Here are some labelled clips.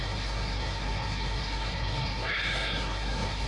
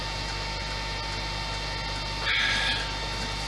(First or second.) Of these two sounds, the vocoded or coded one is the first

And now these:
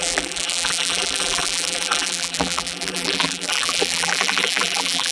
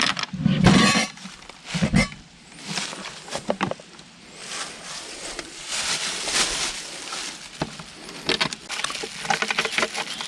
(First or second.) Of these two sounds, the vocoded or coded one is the first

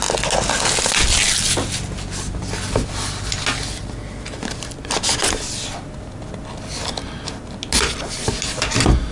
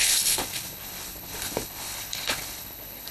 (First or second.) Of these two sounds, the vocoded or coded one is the second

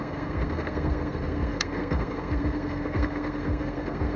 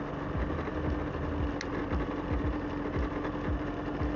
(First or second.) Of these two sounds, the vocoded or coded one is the first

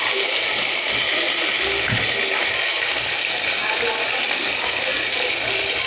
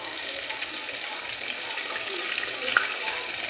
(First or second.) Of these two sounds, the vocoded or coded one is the second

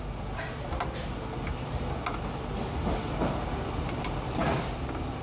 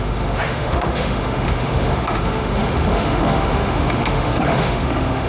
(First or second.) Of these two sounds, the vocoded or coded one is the second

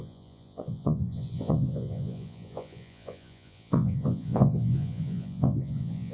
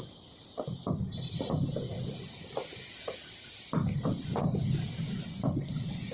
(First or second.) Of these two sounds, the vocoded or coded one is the first